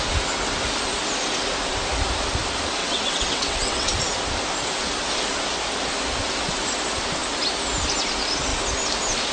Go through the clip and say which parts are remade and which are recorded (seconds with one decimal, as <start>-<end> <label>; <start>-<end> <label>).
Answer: 0.0-2.8 recorded; 2.8-3.9 remade; 3.9-9.3 recorded